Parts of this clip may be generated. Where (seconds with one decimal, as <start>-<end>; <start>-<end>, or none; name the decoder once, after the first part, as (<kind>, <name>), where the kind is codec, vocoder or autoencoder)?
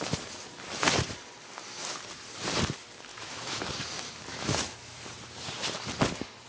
3.1-3.7 (autoencoder, DAC-VAE); 4.3-5.0